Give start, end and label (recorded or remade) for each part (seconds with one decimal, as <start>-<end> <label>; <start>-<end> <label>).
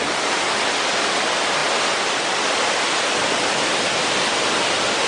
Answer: 0.0-5.1 recorded